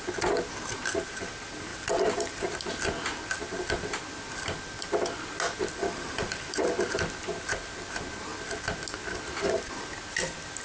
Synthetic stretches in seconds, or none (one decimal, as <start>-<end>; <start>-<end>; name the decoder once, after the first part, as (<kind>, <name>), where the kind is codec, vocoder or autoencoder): 1.7-2.5 (vocoder, BigVGAN v2); 5.8-6.6

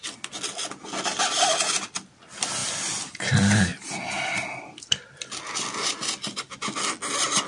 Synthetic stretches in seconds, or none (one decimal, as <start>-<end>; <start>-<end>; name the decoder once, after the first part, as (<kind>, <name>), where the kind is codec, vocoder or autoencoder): 1.1-1.6 (vocoder, BigVGAN v2); 3.7-6.8

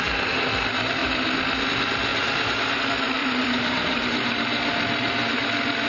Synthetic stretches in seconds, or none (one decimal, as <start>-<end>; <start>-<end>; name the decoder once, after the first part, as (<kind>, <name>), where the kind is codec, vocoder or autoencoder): 2.1-2.8 (vocoder, BigVGAN v2); 3.2-5.3

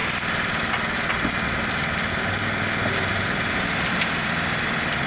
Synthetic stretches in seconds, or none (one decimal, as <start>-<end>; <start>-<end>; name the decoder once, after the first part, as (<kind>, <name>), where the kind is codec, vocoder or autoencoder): 3.1-5.1 (vocoder, BigVGAN v2)

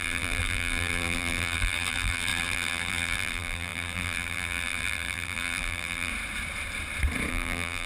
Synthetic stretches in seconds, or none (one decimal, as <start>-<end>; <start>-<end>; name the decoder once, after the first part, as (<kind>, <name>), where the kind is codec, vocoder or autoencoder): 0.0-6.1 (vocoder, BigVGAN v2); 7.3-7.9

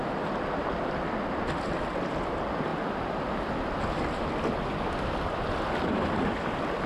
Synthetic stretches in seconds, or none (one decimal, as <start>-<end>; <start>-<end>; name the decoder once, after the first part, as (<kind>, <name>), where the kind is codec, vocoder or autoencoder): none

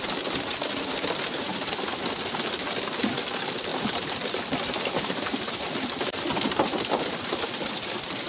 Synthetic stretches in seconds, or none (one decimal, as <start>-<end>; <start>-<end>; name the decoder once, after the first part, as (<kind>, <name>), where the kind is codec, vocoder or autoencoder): 3.7-7.7 (vocoder, BigVGAN v2)